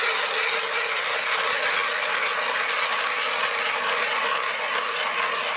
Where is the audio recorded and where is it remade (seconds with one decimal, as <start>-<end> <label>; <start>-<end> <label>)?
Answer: 0.0-5.6 recorded

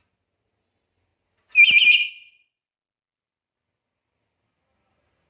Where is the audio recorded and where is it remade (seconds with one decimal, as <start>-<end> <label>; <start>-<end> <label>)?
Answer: 0.0-5.3 recorded

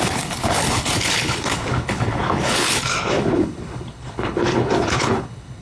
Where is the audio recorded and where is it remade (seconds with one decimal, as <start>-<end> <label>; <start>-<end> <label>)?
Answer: 0.0-5.6 remade